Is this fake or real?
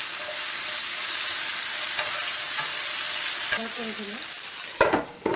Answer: real